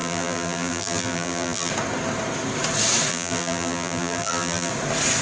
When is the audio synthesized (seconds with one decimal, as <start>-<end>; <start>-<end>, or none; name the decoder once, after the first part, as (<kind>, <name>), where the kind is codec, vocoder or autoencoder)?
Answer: 0.0-1.7 (vocoder, BigVGAN v2); 3.1-4.7